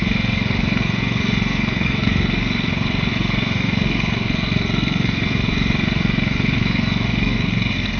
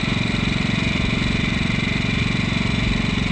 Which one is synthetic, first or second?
first